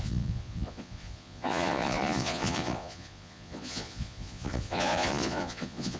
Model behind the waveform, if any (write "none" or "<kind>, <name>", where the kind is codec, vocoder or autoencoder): vocoder, Vocos